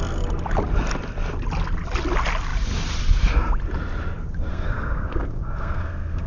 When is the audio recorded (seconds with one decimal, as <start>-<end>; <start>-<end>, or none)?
0.0-4.5